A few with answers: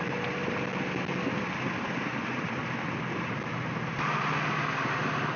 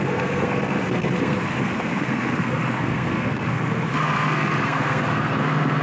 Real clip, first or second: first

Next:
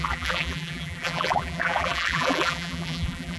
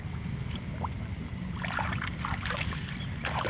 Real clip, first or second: second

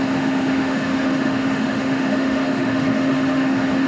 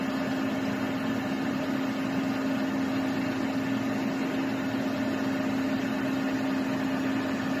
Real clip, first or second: second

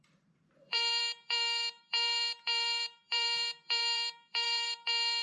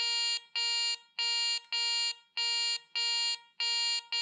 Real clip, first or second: second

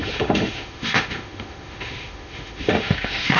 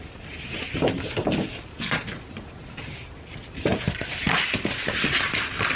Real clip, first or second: second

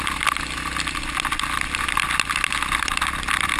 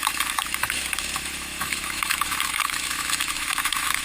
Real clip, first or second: first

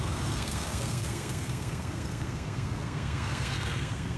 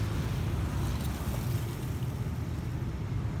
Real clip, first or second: second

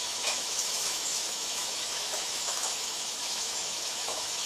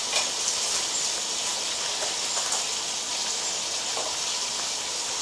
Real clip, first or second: second